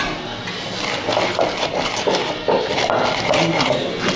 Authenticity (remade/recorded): recorded